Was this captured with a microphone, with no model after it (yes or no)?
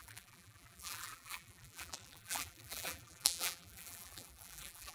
no